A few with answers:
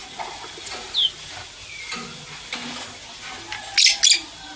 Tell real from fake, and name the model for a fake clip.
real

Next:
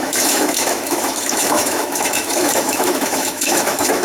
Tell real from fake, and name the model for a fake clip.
fake, autoencoder, DAC-VAE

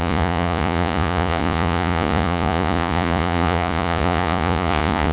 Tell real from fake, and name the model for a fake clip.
fake, vocoder, Vocos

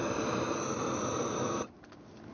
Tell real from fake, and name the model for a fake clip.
real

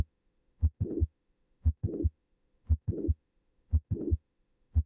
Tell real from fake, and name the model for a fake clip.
fake, autoencoder, DAC-VAE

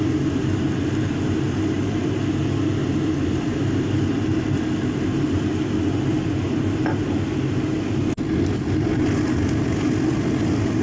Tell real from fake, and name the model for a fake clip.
real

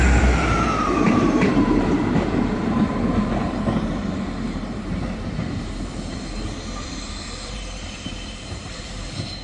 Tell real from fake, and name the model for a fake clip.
fake, vocoder, BigVGAN v2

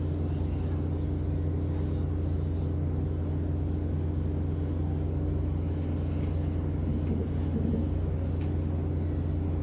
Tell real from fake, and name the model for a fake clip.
real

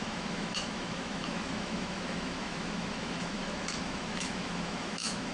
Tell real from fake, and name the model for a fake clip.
fake, autoencoder, DAC-VAE